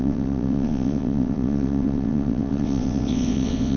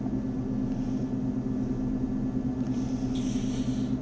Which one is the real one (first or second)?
second